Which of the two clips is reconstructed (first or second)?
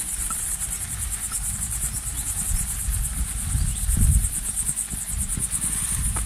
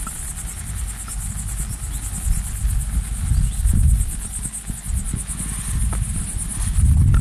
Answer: first